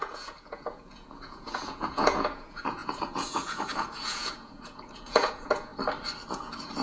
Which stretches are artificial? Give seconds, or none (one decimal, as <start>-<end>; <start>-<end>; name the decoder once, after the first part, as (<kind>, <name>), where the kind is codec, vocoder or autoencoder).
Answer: 0.0-5.7 (vocoder, Vocos); 6.3-6.8